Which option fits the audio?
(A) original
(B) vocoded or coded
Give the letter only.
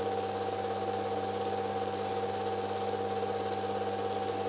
A